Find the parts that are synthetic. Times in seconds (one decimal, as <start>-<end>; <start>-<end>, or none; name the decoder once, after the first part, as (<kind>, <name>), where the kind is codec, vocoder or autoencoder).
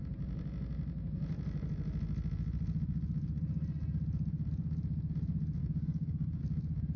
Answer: 5.6-6.4 (codec, DAC)